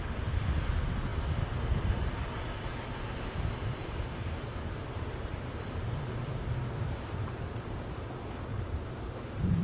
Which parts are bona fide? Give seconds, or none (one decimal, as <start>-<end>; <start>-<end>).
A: 0.0-3.8; 8.0-8.5